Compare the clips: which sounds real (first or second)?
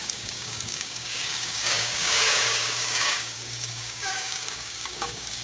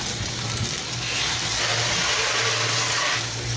second